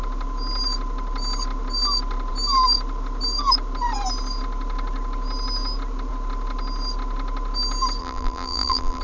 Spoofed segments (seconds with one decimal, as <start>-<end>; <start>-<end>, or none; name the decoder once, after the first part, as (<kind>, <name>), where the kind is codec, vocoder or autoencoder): 8.0-9.0 (vocoder, BigVGAN v2)